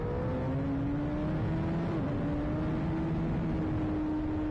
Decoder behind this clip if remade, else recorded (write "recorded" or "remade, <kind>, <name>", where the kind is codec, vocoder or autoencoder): recorded